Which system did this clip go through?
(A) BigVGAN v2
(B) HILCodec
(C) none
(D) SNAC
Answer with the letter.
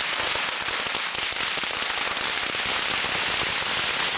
C